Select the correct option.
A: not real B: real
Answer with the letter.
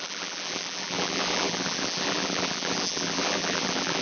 A